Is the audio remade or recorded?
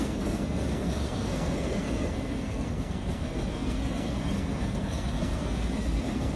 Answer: remade